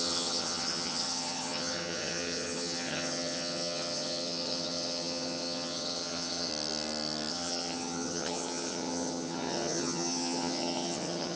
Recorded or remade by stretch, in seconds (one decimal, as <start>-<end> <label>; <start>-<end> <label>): 0.0-6.5 remade; 6.5-7.3 recorded; 7.3-11.4 remade